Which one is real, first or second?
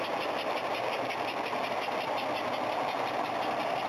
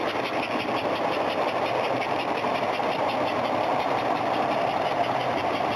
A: first